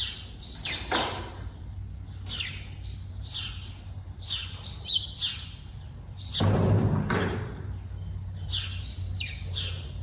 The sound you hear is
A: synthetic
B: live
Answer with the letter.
B